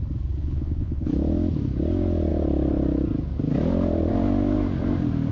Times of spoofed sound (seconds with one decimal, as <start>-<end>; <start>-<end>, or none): 0.4-1.1